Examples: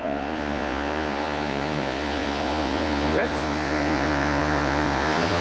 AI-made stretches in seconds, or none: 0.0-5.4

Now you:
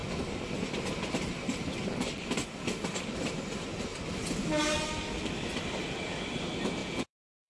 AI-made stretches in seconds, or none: 6.8-7.5